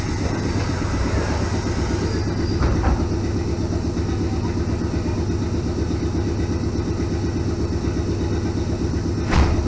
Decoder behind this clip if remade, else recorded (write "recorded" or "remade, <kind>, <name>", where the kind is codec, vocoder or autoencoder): recorded